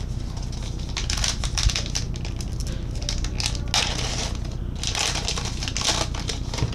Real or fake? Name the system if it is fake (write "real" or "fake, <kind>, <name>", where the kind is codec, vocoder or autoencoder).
real